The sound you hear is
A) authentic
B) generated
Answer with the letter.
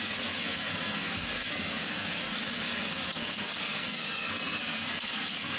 B